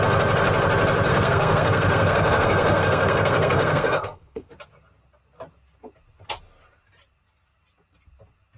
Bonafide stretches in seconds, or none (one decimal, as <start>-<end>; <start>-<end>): 0.0-1.1; 4.5-8.6